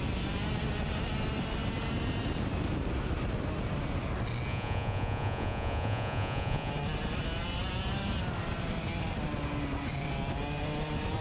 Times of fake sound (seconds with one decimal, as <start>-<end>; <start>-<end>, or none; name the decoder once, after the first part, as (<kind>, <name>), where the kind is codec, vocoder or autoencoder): 4.5-6.7 (vocoder, Vocos)